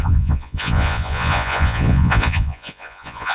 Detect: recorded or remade remade